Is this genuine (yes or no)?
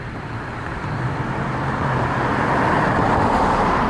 no